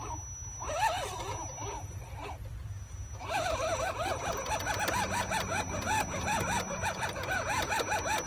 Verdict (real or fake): real